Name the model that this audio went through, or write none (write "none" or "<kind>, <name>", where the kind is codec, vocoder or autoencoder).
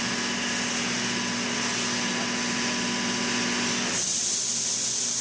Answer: none